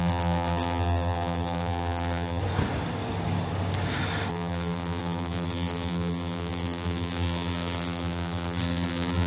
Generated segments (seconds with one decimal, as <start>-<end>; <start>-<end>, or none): 0.0-2.4; 4.3-9.3